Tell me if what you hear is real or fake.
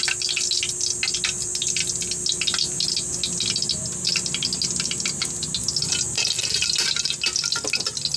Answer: real